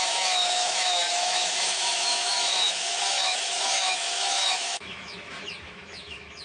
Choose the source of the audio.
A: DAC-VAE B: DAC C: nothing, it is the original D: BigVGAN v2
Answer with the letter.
A